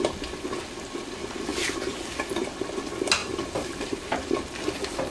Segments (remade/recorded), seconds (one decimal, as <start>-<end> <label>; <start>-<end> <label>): 0.0-3.2 recorded; 3.2-4.4 remade; 4.4-5.1 recorded

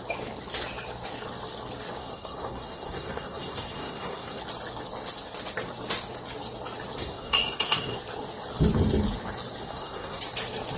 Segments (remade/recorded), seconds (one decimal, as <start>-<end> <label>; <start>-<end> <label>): 0.0-2.0 recorded; 2.0-4.4 remade; 4.4-7.0 recorded; 7.0-8.0 remade; 8.0-9.6 recorded; 9.6-10.2 remade; 10.2-10.8 recorded

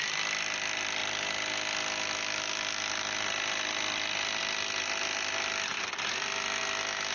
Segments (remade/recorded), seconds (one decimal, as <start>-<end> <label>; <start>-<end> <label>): 0.0-7.1 recorded

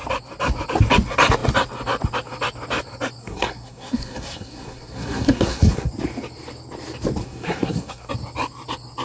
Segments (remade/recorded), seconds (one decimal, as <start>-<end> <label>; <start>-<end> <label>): 0.0-3.2 recorded; 3.2-5.9 remade; 5.9-7.2 recorded; 7.2-8.1 remade; 8.1-9.0 recorded

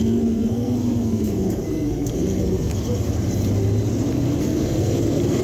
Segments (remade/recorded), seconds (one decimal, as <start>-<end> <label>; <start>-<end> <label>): 0.0-2.7 remade; 2.7-4.4 recorded; 4.4-5.4 remade

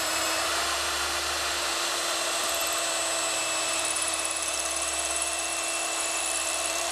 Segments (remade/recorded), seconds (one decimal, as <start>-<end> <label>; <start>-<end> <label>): 0.0-2.6 remade; 2.6-3.7 recorded; 3.7-5.5 remade; 5.5-6.2 recorded; 6.2-6.9 remade

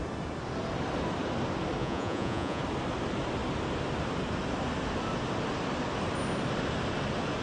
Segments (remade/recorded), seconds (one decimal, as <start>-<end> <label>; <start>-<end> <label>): 0.0-1.8 recorded; 1.8-2.6 remade; 2.6-7.4 recorded